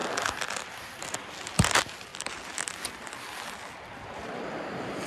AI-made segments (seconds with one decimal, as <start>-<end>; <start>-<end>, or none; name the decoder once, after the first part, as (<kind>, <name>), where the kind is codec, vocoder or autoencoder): none